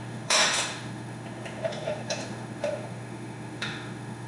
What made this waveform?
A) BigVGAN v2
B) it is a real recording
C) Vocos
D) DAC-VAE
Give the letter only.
D